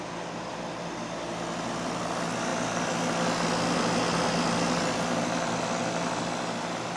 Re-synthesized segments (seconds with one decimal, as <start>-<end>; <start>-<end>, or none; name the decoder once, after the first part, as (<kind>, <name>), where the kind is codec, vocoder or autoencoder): none